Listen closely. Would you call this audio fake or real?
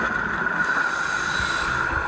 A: real